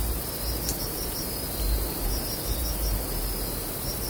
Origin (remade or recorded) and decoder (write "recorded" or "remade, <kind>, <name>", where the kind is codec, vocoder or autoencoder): recorded